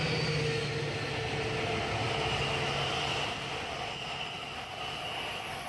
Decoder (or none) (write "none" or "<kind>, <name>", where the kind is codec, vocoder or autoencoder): none